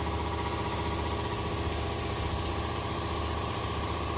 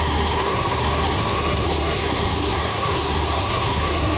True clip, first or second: first